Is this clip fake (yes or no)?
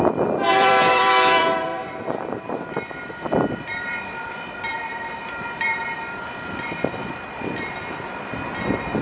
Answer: yes